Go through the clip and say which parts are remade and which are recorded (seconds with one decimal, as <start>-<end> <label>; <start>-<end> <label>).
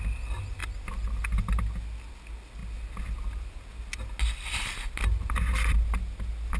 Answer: 0.0-6.6 recorded